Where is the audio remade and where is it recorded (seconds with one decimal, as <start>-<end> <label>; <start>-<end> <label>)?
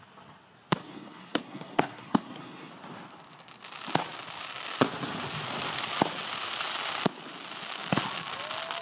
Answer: 0.0-0.8 recorded; 0.8-2.7 remade; 2.7-8.8 recorded